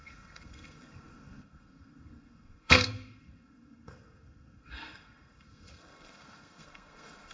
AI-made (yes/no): yes